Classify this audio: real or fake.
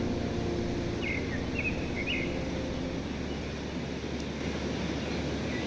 real